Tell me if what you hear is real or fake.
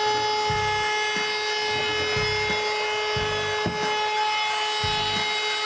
real